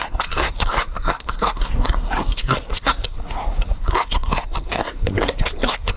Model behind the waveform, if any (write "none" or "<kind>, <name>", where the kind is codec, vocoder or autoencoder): codec, SNAC